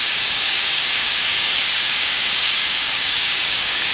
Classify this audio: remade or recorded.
remade